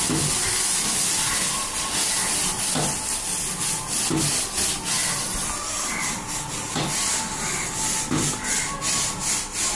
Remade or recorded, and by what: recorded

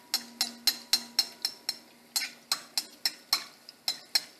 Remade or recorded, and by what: recorded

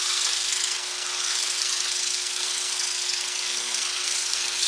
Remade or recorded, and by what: remade, codec, SNAC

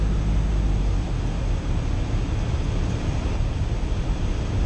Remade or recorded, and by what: recorded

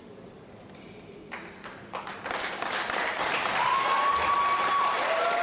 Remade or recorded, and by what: recorded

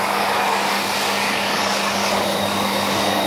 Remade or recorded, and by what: remade, codec, DAC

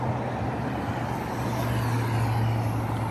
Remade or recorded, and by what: recorded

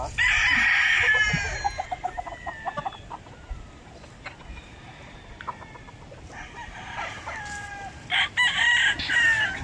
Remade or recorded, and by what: recorded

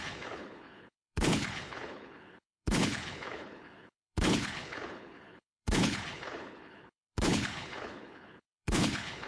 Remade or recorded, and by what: remade, codec, HILCodec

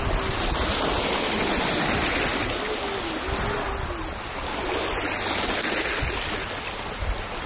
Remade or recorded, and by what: recorded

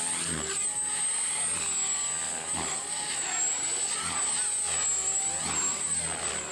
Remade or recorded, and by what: recorded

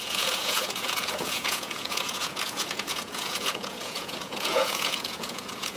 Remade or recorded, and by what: remade, vocoder, Vocos